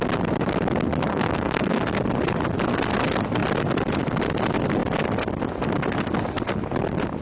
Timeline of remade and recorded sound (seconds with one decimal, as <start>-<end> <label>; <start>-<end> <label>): 0.0-1.1 recorded; 1.1-1.8 remade; 1.8-7.2 recorded